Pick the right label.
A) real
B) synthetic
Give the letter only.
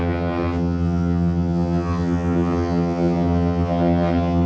B